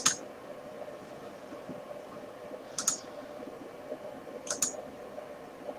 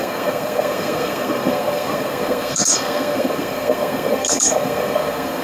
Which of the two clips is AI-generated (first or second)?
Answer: second